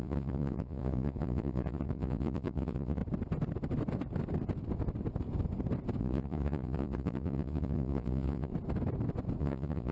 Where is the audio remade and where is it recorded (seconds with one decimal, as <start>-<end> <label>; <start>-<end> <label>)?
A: 0.0-3.0 remade; 3.0-6.0 recorded; 6.0-8.5 remade; 8.5-9.4 recorded; 9.4-9.9 remade